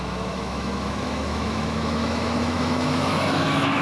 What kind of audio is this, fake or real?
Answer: fake